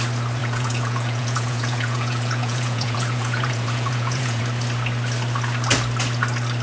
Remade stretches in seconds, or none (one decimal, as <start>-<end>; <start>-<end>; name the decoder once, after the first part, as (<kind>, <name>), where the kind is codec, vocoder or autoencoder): 0.4-4.4 (vocoder, Vocos)